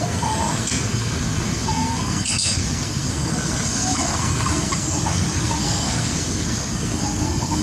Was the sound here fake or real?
fake